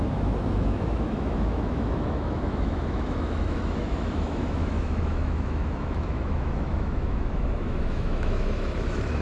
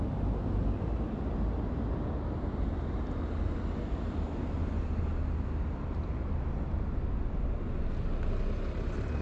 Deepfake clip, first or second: first